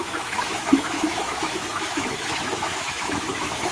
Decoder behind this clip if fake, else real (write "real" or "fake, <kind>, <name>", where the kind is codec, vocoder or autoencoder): fake, autoencoder, DAC-VAE